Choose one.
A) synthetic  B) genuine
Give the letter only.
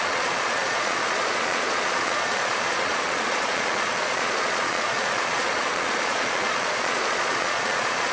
A